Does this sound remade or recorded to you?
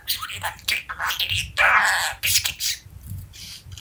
recorded